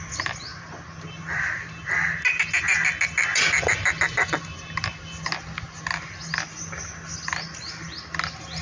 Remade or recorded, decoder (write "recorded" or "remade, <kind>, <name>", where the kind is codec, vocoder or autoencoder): recorded